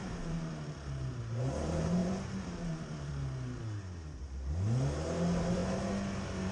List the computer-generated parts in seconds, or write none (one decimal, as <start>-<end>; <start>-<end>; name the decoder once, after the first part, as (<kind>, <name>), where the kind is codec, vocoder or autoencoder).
0.0-0.5 (vocoder, BigVGAN v2); 2.0-2.9